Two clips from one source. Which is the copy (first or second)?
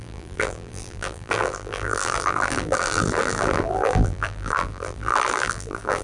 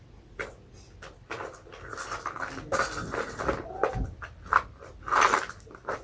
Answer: first